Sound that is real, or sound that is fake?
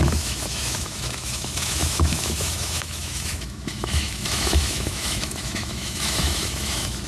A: fake